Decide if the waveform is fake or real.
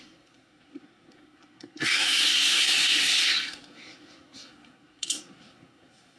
fake